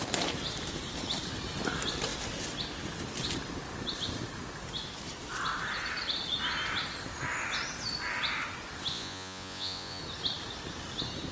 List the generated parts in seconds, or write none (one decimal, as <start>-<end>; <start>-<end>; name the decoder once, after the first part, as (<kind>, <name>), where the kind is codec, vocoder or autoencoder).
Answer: 8.9-10.0 (vocoder, Vocos)